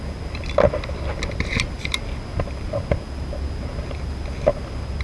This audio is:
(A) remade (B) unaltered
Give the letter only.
B